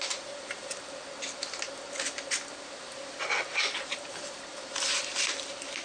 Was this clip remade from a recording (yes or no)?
no